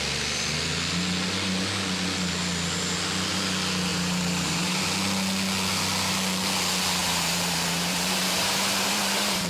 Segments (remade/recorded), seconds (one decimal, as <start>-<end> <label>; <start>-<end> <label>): 0.0-3.9 recorded; 3.9-4.8 remade; 4.8-7.0 recorded; 7.0-9.5 remade